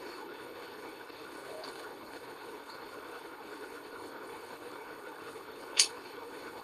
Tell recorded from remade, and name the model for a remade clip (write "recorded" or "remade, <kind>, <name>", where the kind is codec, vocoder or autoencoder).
remade, codec, HILCodec